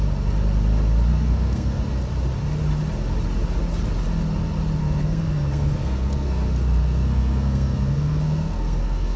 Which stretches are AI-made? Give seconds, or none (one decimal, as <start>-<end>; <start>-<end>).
1.1-1.8; 4.8-9.2